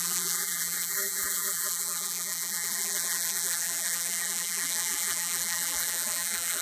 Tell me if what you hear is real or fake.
fake